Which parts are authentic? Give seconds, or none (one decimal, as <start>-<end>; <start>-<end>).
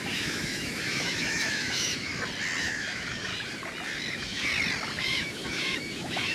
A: 2.1-2.6; 3.3-4.1; 4.5-5.0